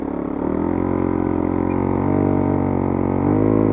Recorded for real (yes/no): yes